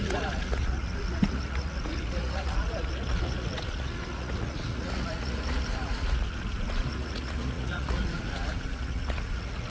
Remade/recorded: remade